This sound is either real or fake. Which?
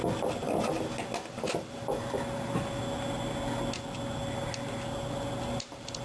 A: real